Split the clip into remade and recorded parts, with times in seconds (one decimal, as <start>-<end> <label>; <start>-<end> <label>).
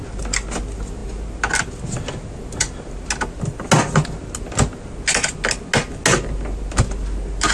0.0-7.5 recorded